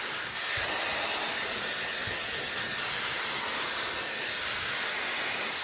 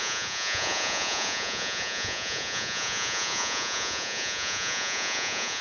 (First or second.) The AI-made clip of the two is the second